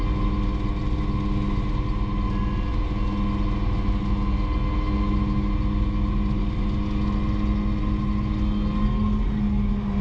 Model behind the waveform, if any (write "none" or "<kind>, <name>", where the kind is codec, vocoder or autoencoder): none